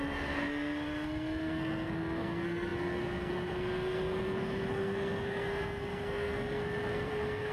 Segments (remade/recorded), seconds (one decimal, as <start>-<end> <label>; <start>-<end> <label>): 0.0-7.5 remade